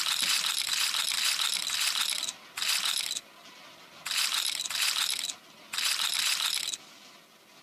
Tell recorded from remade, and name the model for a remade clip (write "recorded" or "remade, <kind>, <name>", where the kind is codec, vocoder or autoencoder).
recorded